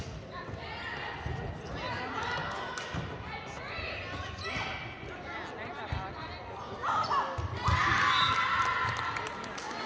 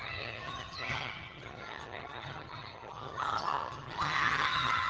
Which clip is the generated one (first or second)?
second